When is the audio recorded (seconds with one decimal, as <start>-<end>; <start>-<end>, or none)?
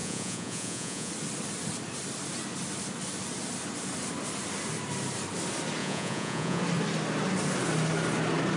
1.1-5.8; 6.6-8.6